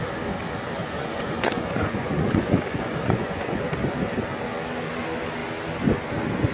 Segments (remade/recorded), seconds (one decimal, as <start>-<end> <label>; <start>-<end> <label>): 0.0-0.8 recorded; 0.8-3.7 remade; 3.7-6.5 recorded